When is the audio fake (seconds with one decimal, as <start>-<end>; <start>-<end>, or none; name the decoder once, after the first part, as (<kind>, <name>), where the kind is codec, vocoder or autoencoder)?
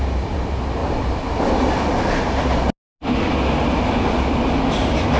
none